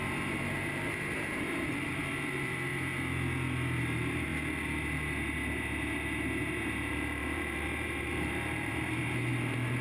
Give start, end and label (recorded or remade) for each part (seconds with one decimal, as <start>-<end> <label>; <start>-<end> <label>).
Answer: 0.0-2.7 remade; 2.7-3.8 recorded; 3.8-4.3 remade; 4.3-6.9 recorded; 6.9-9.8 remade